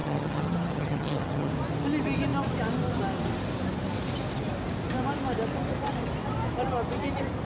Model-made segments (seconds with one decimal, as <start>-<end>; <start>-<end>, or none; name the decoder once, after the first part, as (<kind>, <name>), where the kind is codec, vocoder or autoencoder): 0.0-1.5 (vocoder, HiFi-GAN)